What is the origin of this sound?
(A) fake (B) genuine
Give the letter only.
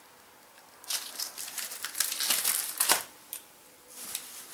A